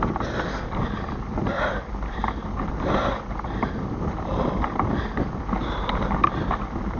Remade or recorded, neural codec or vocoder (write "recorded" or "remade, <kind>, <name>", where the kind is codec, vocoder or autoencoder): recorded